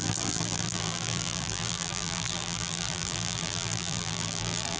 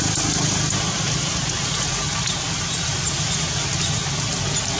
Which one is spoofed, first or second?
first